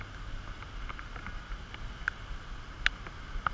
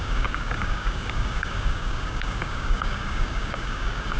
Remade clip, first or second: second